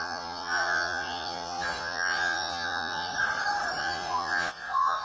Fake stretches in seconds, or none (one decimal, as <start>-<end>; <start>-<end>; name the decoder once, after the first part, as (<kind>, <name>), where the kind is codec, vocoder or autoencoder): 0.0-3.1 (vocoder, Vocos); 3.8-5.0